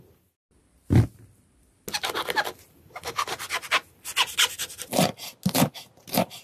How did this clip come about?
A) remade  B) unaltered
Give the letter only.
B